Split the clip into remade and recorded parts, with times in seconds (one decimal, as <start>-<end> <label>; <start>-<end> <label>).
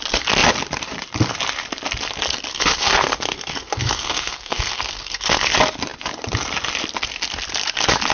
0.0-2.5 recorded; 2.5-5.5 remade; 5.5-8.1 recorded